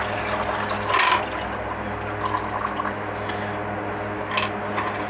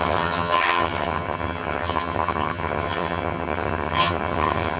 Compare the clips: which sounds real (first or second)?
first